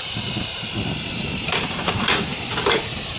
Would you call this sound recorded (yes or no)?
no